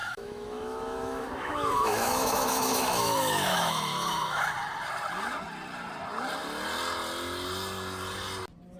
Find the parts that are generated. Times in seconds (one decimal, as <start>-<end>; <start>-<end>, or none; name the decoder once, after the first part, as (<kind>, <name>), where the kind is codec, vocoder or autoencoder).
0.0-4.4 (autoencoder, DAC-VAE)